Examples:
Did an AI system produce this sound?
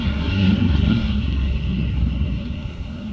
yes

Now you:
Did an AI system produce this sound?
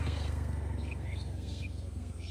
yes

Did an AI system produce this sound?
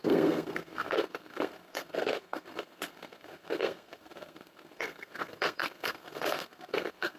yes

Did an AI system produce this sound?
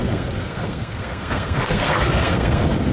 yes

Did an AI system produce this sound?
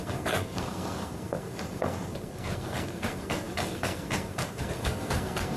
yes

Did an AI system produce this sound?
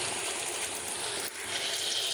no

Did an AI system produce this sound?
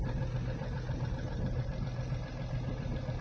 no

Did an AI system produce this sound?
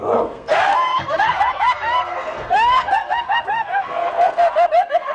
yes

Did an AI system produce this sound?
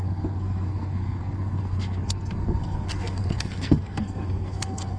yes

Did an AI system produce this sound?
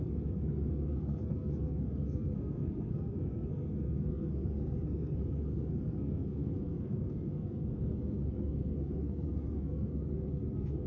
yes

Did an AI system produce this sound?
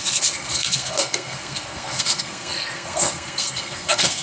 yes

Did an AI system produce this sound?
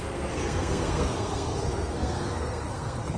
yes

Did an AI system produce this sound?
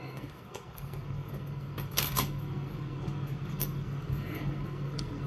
yes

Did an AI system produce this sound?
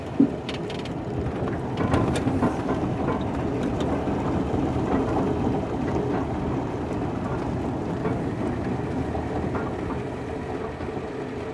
no